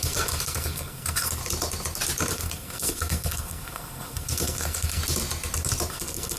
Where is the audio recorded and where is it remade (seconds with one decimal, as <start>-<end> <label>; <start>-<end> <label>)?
0.0-1.4 remade; 1.4-2.3 recorded; 2.3-5.0 remade; 5.0-5.9 recorded; 5.9-6.4 remade